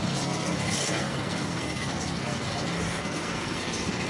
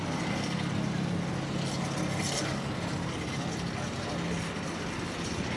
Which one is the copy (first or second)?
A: first